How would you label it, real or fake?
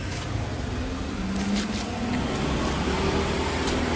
real